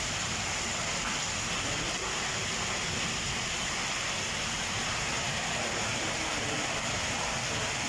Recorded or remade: recorded